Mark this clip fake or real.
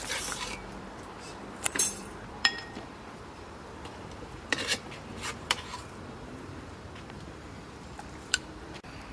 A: fake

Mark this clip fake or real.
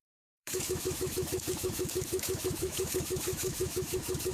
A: fake